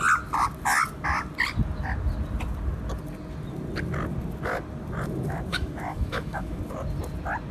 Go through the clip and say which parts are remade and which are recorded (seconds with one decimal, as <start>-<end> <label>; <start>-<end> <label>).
0.0-5.5 recorded; 5.5-6.6 remade; 6.6-7.5 recorded